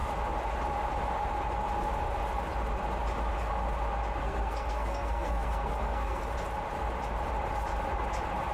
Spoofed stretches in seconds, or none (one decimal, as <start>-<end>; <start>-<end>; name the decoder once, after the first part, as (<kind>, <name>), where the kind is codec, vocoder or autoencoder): 4.2-6.2 (codec, SNAC)